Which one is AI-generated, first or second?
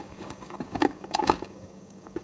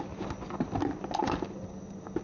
first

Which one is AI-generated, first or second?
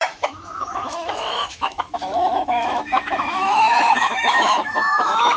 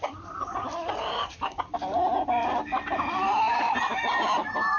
first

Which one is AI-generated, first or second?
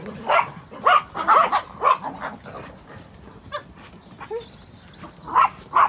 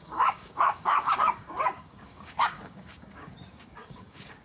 second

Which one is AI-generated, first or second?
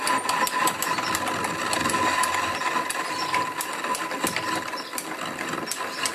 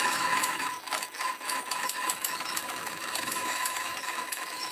second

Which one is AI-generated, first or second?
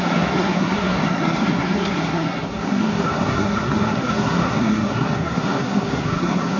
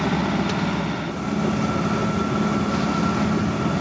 first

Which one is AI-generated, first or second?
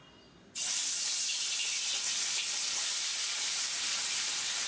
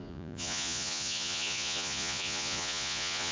second